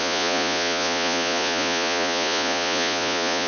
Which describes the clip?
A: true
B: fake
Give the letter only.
B